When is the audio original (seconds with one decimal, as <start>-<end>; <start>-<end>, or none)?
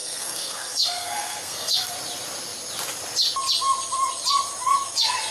1.9-5.3